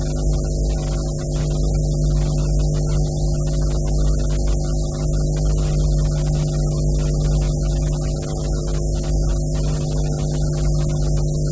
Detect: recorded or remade recorded